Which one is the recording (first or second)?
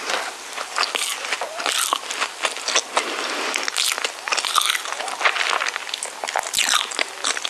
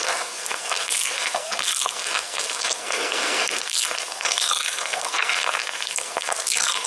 first